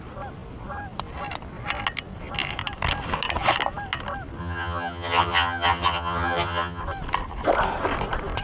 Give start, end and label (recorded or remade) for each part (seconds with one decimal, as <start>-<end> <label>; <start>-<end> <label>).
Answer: 0.0-4.4 recorded; 4.4-6.8 remade; 6.8-8.4 recorded